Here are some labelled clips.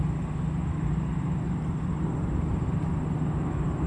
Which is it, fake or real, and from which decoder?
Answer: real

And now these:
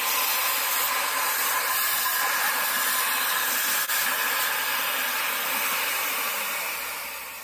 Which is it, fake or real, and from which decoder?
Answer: real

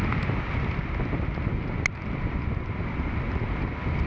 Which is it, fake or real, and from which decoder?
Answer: real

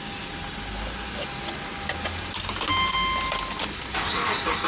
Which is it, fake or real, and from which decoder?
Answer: real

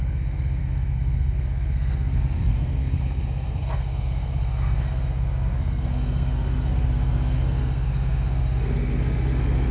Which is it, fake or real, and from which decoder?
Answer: fake, codec, SNAC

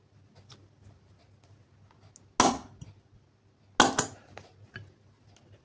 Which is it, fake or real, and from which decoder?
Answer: real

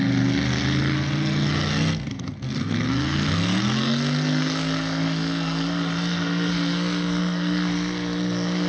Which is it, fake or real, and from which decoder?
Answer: fake, codec, SNAC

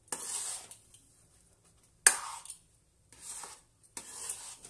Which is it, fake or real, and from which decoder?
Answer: real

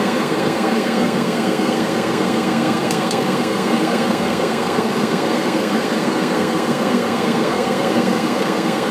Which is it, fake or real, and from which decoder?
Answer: fake, codec, SNAC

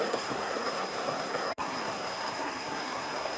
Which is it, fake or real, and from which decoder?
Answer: fake, codec, SNAC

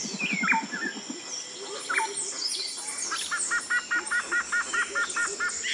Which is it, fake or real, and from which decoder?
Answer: real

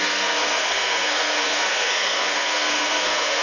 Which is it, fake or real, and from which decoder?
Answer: fake, codec, SNAC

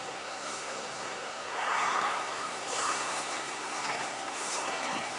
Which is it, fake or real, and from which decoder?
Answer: fake, codec, SNAC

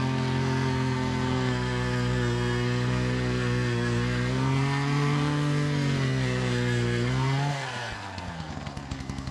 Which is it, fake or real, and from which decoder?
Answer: fake, codec, SNAC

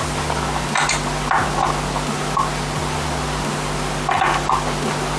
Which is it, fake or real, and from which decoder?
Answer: real